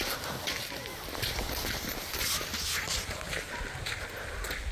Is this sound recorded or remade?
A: recorded